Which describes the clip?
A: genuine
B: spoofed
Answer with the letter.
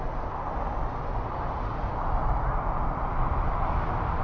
A